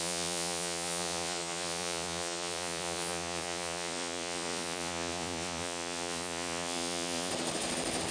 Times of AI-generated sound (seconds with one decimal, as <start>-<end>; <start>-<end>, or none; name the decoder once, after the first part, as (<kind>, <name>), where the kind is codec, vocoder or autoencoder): 0.0-7.3 (vocoder, Vocos)